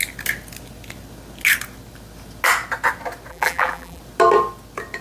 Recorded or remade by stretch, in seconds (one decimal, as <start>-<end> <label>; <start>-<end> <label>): 0.0-3.3 recorded; 3.3-4.0 remade; 4.0-5.0 recorded